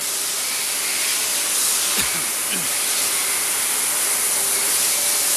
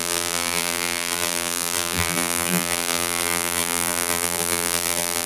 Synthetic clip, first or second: second